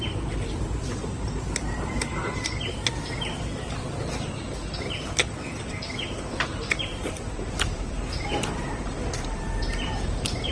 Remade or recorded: remade